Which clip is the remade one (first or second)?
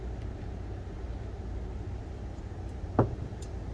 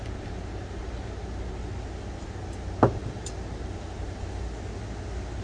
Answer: first